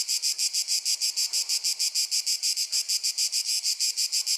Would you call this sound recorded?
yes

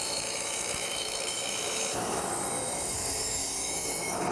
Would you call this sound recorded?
no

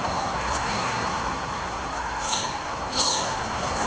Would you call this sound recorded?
no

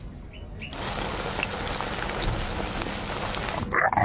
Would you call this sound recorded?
yes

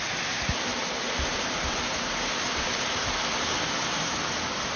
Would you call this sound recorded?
yes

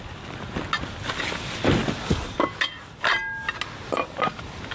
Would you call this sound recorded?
yes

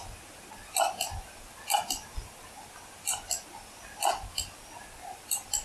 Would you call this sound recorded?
yes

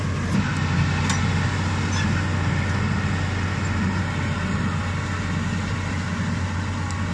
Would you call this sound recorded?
yes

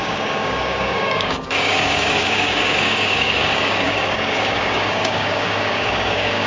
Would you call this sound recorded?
no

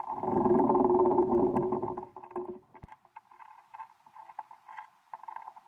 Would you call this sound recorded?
no